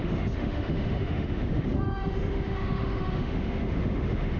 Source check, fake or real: fake